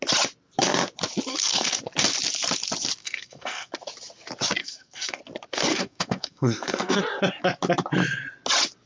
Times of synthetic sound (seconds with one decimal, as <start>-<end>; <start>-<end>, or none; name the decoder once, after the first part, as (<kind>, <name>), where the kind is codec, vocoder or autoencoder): 1.3-1.8 (codec, SNAC); 3.0-3.7; 4.6-5.2; 5.7-7.0